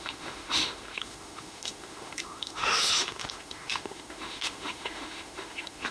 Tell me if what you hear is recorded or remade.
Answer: remade